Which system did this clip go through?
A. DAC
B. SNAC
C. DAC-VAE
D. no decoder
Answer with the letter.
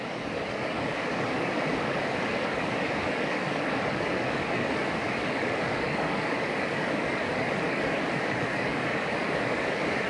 A